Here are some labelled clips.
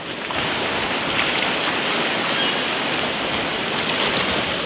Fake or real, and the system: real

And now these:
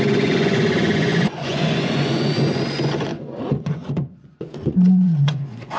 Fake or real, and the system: fake, vocoder, Vocos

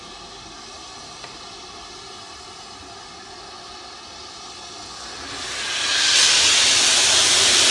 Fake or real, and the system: real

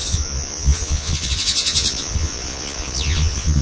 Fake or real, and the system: fake, vocoder, Vocos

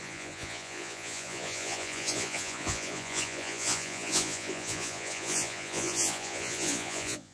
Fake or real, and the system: fake, vocoder, Vocos